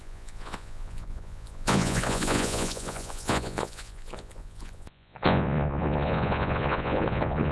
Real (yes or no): no